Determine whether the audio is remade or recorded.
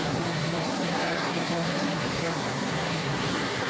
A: remade